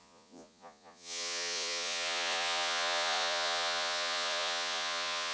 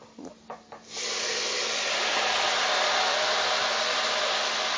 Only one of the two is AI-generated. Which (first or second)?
first